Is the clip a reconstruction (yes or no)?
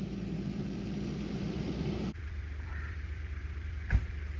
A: yes